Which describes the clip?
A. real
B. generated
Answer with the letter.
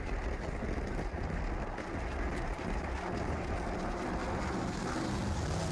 A